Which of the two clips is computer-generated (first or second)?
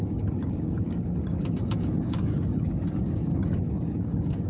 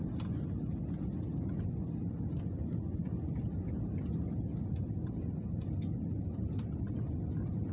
first